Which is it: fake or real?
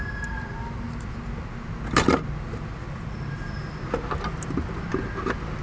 real